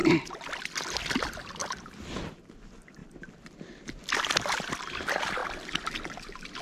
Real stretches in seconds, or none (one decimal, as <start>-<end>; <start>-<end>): 1.6-2.2; 5.4-6.6